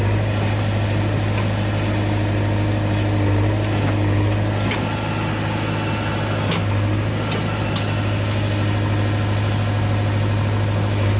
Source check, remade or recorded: recorded